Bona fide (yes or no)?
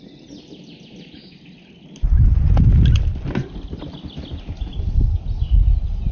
yes